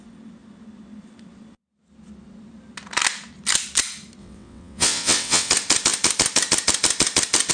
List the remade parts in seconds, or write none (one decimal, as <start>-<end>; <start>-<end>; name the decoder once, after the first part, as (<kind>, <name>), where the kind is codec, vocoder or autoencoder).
4.2-5.5 (vocoder, WaveNeXt)